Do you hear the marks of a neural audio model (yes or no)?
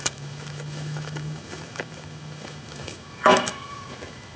yes